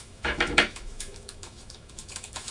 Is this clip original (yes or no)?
no